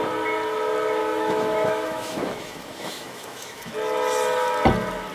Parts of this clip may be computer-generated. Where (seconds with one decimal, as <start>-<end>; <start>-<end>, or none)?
1.0-3.7